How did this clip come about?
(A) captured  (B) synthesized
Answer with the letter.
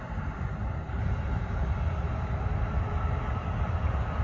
A